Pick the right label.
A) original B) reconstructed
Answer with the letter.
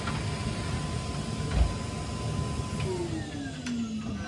A